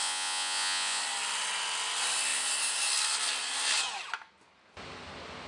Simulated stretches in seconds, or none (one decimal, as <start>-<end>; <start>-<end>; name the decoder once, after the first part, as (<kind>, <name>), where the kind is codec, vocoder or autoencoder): 0.0-1.0 (vocoder, Vocos)